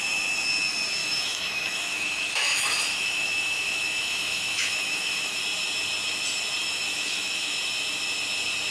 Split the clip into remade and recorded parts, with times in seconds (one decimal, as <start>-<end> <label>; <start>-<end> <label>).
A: 0.0-1.0 recorded; 1.0-5.4 remade; 5.4-6.6 recorded; 6.6-7.5 remade; 7.5-8.7 recorded